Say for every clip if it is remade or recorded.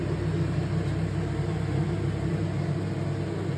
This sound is recorded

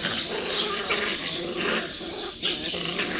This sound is recorded